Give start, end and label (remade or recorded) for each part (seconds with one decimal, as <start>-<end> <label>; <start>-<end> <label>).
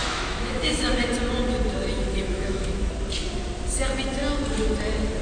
0.0-1.1 remade; 1.1-2.1 recorded; 2.1-2.9 remade; 2.9-5.2 recorded